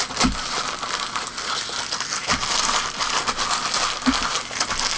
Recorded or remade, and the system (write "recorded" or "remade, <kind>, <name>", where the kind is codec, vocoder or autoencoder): recorded